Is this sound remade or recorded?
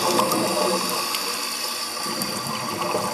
recorded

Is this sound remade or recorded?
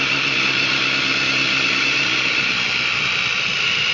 recorded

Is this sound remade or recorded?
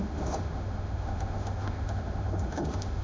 remade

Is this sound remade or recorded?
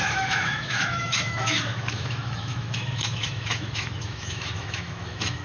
remade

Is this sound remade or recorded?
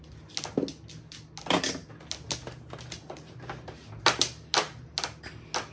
recorded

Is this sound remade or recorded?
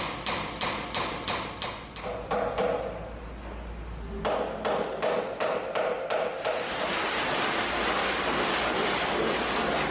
recorded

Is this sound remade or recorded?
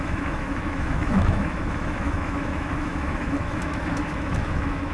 remade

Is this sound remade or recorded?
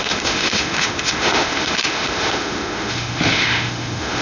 remade